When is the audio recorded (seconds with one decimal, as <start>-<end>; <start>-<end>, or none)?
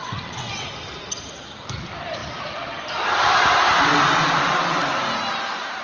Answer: 0.7-5.8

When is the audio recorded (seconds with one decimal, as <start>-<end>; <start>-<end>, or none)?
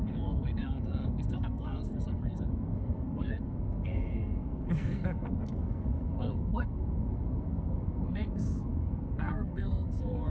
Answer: none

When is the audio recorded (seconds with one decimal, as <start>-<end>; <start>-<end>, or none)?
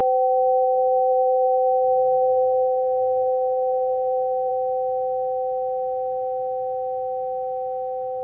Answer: 4.5-8.2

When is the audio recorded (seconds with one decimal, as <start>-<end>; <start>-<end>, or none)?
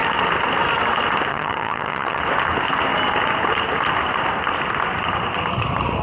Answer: 0.0-1.3; 2.2-6.0